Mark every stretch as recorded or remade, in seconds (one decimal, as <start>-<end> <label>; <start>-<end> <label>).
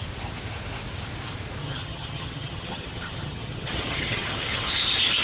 0.0-1.6 recorded; 1.6-4.7 remade; 4.7-5.2 recorded